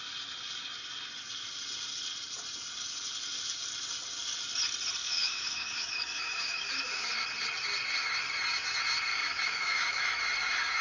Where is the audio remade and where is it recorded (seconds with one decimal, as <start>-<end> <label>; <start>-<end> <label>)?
0.0-5.0 recorded; 5.0-7.1 remade; 7.1-9.1 recorded; 9.1-10.2 remade; 10.2-10.8 recorded